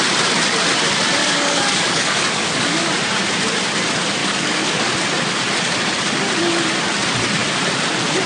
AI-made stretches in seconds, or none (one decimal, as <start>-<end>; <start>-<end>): 1.2-2.9; 4.2-4.9